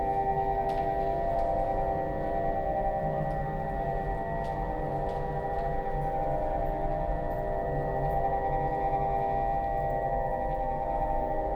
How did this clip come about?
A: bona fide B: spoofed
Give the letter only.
A